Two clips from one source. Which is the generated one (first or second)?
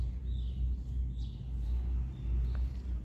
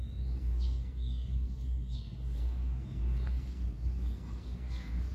second